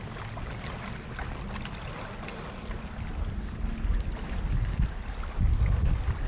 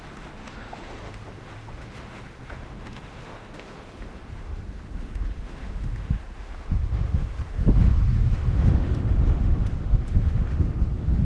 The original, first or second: first